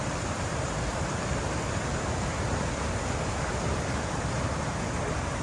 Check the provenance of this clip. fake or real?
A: real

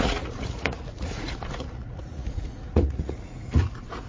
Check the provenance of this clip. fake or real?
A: fake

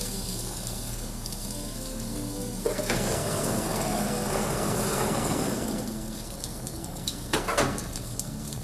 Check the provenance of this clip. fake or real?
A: fake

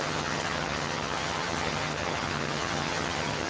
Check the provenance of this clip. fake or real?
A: fake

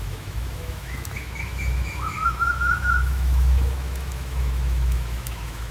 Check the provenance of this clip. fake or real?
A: fake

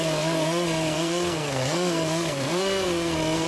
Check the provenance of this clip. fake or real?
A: fake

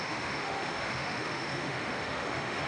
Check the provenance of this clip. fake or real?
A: fake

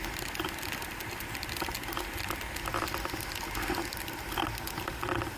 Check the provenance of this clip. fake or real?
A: real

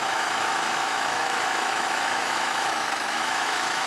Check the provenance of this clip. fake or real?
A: fake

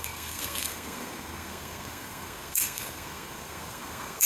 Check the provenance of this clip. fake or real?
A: fake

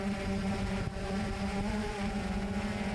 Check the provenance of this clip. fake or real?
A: fake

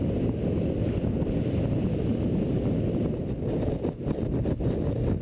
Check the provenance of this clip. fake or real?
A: real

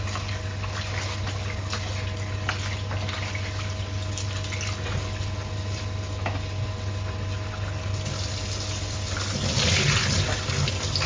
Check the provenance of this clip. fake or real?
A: real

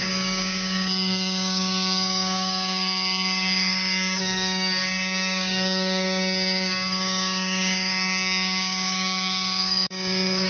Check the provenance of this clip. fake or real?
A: fake